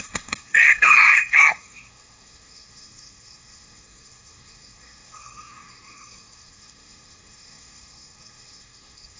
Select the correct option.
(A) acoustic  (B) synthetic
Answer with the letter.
B